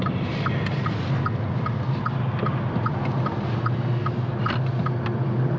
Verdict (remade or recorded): recorded